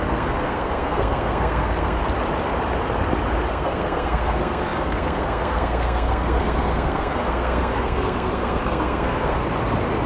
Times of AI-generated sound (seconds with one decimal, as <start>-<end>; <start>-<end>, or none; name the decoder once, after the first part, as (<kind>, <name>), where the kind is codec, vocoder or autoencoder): 0.0-2.0 (codec, SNAC); 3.5-9.4